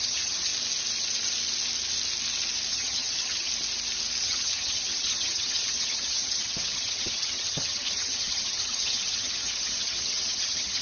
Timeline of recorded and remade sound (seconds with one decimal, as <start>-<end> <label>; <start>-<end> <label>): 0.0-0.5 remade; 0.5-2.7 recorded; 2.7-3.5 remade; 3.5-4.2 recorded; 4.2-10.8 remade